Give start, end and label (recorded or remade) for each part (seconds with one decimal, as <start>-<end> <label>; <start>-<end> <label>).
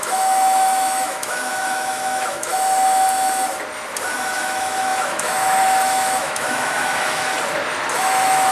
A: 0.0-2.5 remade; 2.5-4.4 recorded; 4.4-7.3 remade; 7.3-7.9 recorded; 7.9-8.5 remade